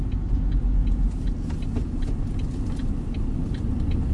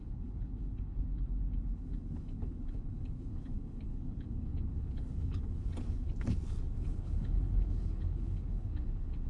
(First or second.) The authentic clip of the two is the first